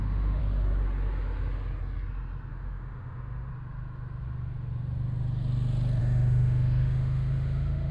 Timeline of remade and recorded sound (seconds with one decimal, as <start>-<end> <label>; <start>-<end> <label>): 0.0-0.4 remade; 0.4-2.5 recorded; 2.5-3.5 remade; 3.5-6.0 recorded; 6.0-7.9 remade